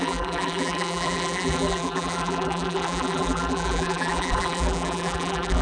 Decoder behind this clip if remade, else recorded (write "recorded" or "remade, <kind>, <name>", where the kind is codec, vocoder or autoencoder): remade, vocoder, BigVGAN v2